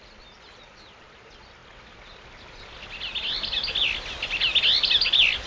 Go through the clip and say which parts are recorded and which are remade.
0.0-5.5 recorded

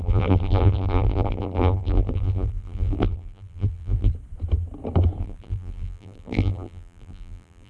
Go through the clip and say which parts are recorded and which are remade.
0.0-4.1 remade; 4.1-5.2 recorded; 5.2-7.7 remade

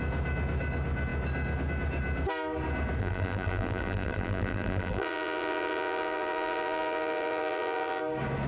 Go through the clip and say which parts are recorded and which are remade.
0.0-3.0 recorded; 3.0-8.0 remade; 8.0-8.5 recorded